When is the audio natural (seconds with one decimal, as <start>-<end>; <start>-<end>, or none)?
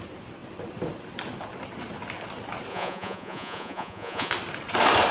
0.0-2.7; 4.3-5.1